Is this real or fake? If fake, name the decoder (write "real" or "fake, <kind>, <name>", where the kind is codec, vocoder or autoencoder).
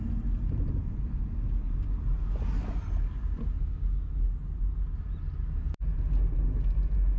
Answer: real